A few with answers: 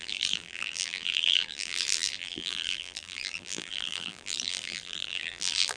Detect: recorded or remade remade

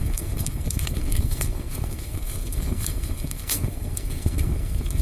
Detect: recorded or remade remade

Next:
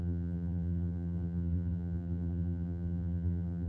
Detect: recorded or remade remade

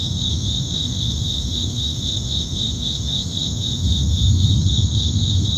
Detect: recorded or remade remade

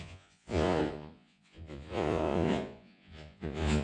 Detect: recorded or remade remade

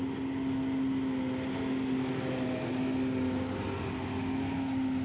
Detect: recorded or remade recorded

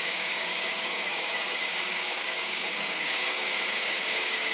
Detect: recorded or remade remade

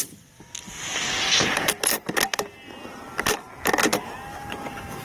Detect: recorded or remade recorded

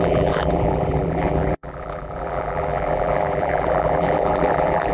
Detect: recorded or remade remade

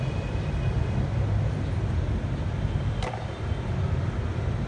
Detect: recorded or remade recorded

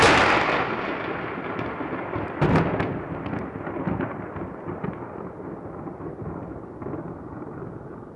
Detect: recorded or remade recorded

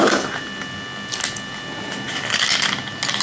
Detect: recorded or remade recorded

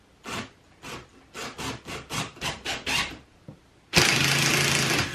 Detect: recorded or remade recorded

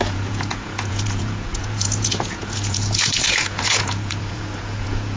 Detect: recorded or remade remade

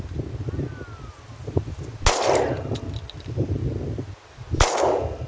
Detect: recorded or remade recorded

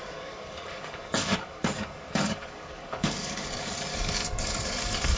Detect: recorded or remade remade